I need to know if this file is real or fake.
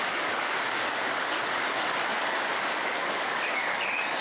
fake